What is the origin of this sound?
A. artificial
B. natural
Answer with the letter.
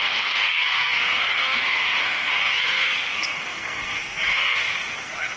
A